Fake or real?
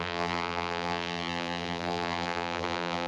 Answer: fake